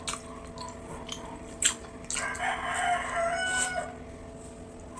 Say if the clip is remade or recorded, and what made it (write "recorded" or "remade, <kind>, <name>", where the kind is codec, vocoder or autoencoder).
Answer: recorded